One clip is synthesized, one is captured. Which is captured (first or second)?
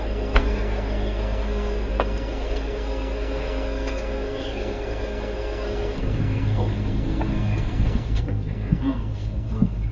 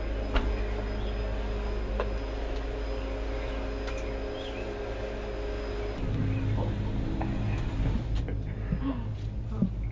second